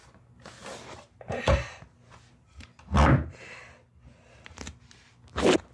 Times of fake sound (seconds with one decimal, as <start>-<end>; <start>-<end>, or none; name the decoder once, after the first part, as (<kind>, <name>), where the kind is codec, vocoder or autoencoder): none